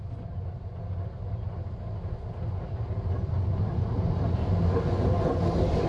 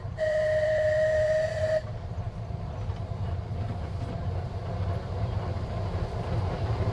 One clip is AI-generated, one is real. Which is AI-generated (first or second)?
second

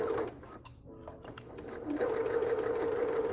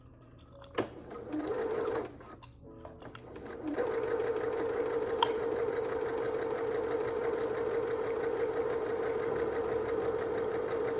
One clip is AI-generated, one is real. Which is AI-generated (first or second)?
first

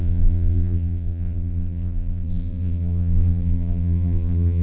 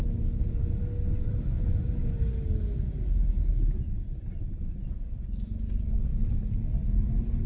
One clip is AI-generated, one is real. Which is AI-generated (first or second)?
first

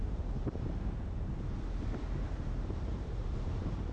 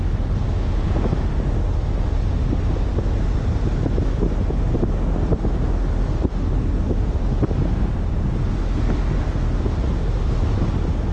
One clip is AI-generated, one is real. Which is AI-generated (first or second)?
first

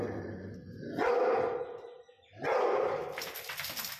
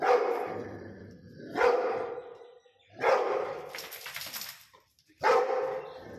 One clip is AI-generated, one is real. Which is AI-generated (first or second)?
second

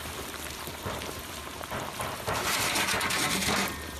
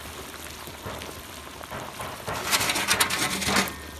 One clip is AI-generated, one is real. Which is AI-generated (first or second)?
first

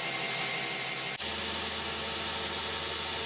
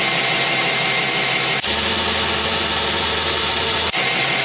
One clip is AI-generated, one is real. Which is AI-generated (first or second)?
second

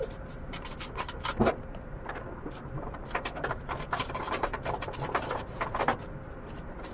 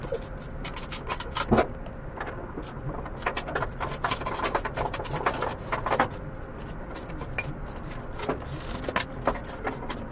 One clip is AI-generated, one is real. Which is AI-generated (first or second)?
first